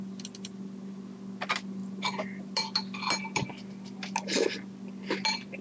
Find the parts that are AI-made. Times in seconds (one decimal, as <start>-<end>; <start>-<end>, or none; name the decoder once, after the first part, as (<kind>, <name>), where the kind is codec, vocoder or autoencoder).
none